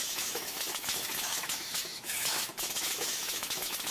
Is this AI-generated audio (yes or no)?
yes